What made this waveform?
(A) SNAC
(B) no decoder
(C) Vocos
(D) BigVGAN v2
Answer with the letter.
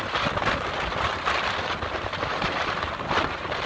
B